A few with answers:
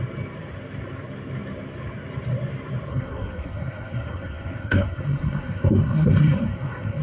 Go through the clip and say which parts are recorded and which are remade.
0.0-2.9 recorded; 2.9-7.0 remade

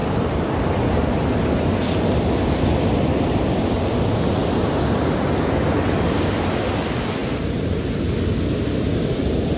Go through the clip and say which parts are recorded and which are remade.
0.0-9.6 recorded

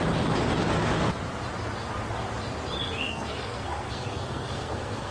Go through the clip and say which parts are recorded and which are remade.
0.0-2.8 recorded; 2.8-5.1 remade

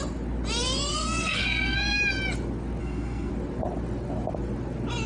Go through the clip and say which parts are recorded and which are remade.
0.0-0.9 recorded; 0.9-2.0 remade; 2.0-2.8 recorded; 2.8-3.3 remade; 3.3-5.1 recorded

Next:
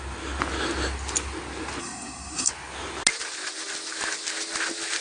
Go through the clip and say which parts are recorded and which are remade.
0.0-1.8 recorded; 1.8-2.5 remade; 2.5-5.0 recorded

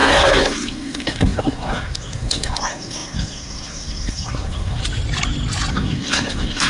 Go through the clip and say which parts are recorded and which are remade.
0.0-4.8 remade; 4.8-5.7 recorded; 5.7-6.7 remade

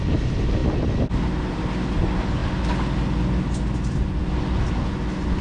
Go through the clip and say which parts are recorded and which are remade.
0.0-5.4 recorded

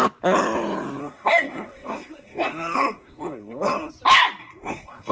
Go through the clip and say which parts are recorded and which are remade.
0.0-1.0 recorded; 1.0-3.9 remade; 3.9-4.4 recorded; 4.4-5.1 remade